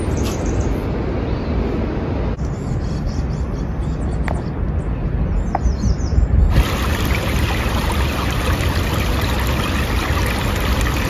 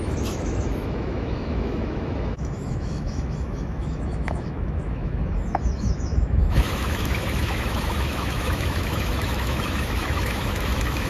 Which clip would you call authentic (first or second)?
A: first